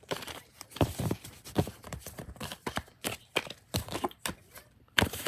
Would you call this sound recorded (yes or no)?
no